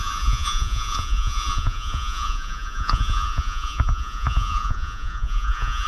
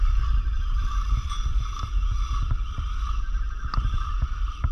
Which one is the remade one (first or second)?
first